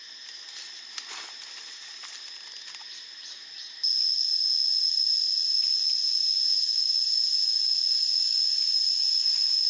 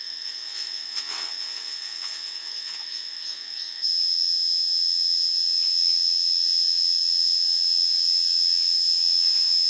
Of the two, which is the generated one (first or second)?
second